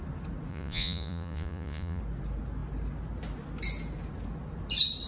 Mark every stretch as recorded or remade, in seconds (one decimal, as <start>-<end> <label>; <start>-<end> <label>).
0.0-0.5 recorded; 0.5-2.0 remade; 2.0-5.1 recorded